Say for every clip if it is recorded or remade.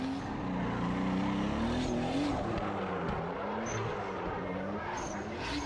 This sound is recorded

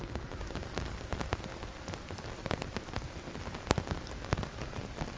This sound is recorded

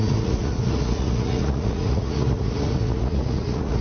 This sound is remade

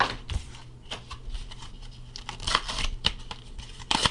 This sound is recorded